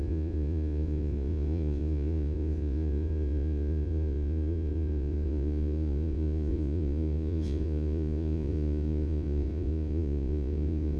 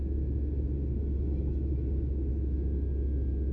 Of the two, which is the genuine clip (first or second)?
second